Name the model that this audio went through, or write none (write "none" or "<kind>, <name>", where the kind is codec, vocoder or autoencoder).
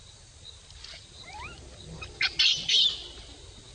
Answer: none